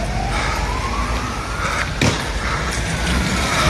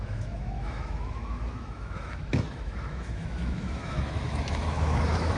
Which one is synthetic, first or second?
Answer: second